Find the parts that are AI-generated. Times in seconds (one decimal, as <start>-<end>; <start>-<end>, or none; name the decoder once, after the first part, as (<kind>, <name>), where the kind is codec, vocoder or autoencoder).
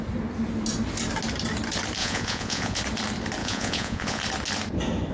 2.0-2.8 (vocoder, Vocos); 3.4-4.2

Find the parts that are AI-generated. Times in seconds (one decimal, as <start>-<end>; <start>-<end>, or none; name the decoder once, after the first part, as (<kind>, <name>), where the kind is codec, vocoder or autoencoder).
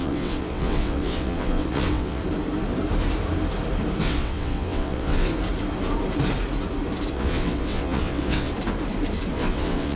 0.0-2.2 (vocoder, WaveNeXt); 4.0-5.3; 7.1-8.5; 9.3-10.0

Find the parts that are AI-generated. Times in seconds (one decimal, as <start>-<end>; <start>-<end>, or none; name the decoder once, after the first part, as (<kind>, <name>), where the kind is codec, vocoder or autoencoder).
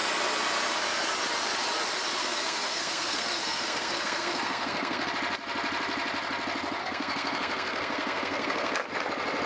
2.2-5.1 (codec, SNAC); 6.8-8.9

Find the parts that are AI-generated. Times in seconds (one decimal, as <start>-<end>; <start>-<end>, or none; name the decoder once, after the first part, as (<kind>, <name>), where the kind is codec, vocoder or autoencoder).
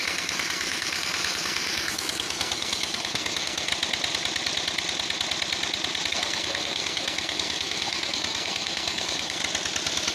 0.0-3.7 (codec, SNAC); 6.1-9.4